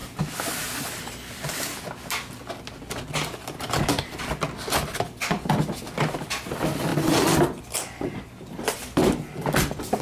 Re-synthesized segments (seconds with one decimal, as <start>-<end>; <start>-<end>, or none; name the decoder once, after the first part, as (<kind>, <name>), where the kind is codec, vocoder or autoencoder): none